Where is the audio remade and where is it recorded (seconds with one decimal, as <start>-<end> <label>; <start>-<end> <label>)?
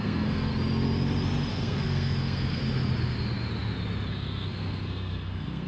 0.0-0.5 remade; 0.5-1.5 recorded; 1.5-2.6 remade; 2.6-4.1 recorded; 4.1-5.7 remade